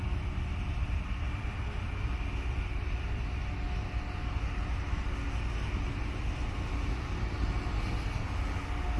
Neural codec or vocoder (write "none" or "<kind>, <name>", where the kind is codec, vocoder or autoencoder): none